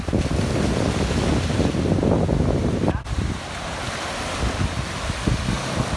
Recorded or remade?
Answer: recorded